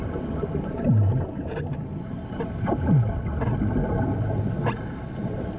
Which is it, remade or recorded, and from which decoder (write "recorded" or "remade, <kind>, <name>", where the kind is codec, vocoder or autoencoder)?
recorded